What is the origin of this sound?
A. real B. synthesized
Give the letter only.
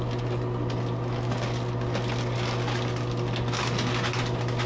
A